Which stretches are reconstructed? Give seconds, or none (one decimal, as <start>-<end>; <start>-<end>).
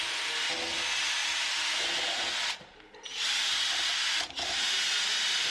none